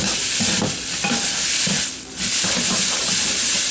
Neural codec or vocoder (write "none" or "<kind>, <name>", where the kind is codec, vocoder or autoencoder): none